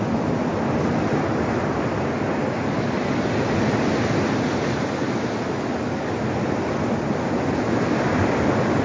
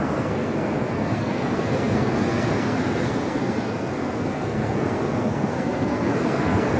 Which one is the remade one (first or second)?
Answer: second